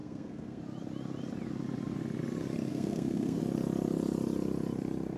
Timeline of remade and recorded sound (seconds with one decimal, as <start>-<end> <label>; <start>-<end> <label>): 0.0-0.6 remade; 0.6-2.7 recorded; 2.7-3.4 remade; 3.4-5.2 recorded